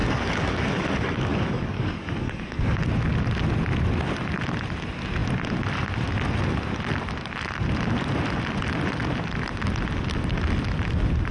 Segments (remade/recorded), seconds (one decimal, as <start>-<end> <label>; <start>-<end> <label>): 0.0-2.8 remade; 2.8-11.3 recorded